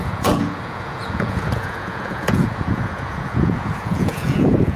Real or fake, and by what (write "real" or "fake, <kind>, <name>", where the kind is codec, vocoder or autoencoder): fake, vocoder, Vocos